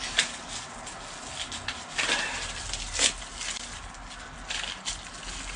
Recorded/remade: recorded